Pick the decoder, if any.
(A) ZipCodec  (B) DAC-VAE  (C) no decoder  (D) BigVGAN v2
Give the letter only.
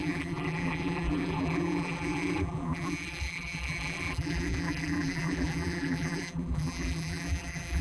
D